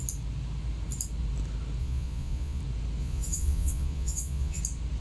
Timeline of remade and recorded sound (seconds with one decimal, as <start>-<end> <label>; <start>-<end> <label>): 0.0-1.8 recorded; 1.8-2.6 remade; 2.6-3.0 recorded; 3.0-4.6 remade; 4.6-5.0 recorded